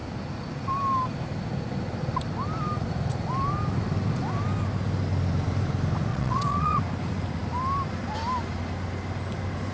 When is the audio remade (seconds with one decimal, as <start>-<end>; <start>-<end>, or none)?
6.1-6.8